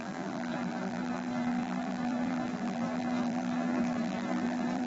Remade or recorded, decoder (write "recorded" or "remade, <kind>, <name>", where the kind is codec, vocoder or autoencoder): remade, vocoder, BigVGAN v2